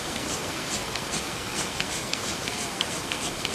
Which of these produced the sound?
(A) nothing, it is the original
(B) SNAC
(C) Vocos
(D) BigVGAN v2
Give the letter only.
B